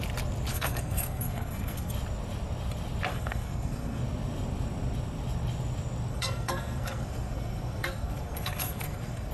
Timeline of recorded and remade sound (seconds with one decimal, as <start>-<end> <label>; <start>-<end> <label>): 0.0-0.5 recorded; 0.5-1.9 remade; 1.9-3.1 recorded; 3.1-4.0 remade; 4.0-6.1 recorded; 6.1-9.3 remade